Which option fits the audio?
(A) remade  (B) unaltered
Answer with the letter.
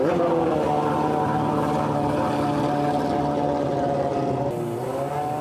B